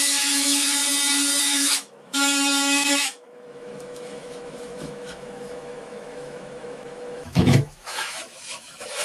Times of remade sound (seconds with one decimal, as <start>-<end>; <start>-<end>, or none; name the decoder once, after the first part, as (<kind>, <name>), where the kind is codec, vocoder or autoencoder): 0.0-0.8 (autoencoder, DAC-VAE); 1.4-9.0